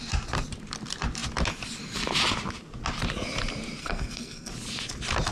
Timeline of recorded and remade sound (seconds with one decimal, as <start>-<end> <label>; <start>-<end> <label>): 0.0-3.8 recorded; 3.8-4.5 remade; 4.5-5.3 recorded